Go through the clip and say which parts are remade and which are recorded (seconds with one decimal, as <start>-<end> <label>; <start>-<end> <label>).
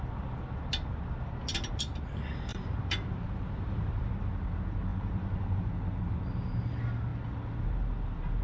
0.0-2.5 recorded; 2.5-4.1 remade; 4.1-4.9 recorded; 4.9-5.7 remade; 5.7-8.4 recorded